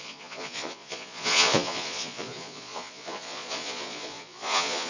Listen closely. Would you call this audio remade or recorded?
remade